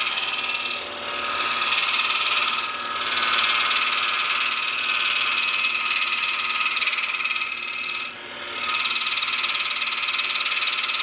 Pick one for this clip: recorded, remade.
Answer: recorded